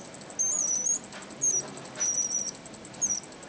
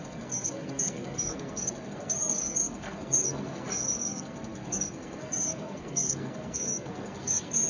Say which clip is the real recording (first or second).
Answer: first